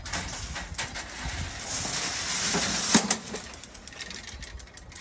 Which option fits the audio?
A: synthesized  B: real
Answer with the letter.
B